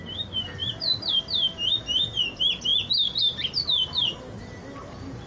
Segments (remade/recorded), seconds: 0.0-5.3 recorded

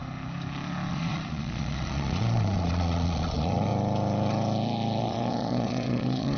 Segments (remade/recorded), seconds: 0.0-0.9 recorded; 0.9-3.7 remade; 3.7-5.0 recorded; 5.0-6.4 remade

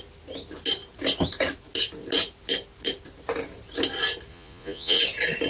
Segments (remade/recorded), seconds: 0.0-4.3 recorded; 4.3-5.0 remade; 5.0-5.5 recorded

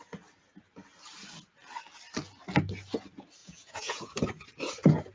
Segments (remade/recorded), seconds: 0.0-3.4 recorded; 3.4-4.1 remade; 4.1-5.1 recorded